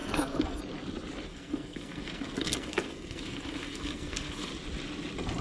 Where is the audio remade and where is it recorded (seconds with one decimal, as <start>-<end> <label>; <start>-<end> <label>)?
0.0-0.6 remade; 0.6-1.3 recorded; 1.3-4.5 remade; 4.5-5.4 recorded